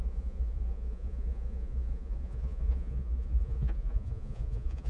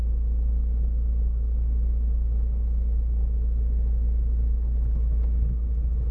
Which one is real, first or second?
second